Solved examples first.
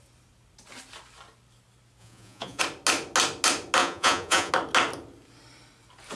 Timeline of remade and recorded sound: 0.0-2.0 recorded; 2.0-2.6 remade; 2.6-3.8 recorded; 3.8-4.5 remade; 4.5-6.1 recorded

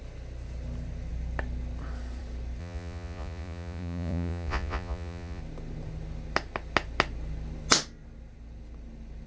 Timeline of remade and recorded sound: 0.0-2.6 recorded; 2.6-5.4 remade; 5.4-9.3 recorded